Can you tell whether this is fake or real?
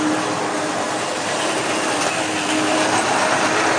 real